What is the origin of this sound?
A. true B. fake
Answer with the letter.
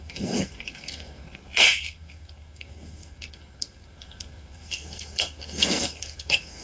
B